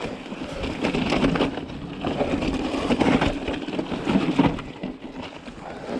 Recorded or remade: recorded